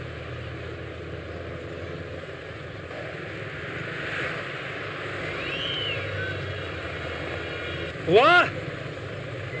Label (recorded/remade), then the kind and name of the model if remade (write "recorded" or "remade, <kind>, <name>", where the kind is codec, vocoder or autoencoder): recorded